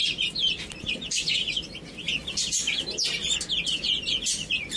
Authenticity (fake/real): real